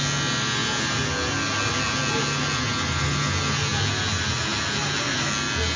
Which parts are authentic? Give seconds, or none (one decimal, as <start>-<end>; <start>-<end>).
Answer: 0.0-5.8